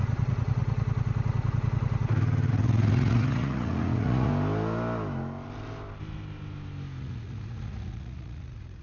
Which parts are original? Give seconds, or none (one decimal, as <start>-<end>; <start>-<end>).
0.6-2.5; 4.3-7.0